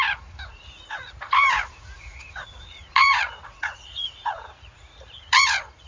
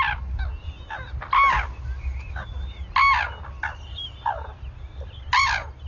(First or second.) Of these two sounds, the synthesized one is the first